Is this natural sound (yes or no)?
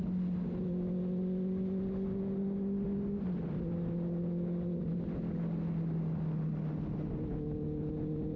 yes